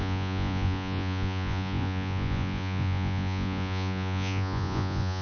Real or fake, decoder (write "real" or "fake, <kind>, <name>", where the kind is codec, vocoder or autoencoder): fake, vocoder, Vocos